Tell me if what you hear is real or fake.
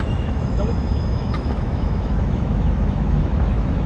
fake